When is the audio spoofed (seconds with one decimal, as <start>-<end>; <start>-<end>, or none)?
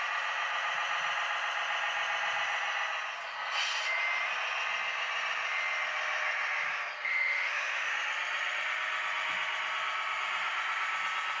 7.1-7.9